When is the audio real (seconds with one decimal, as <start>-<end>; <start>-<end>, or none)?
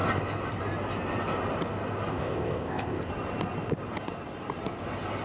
0.0-2.1; 3.1-5.2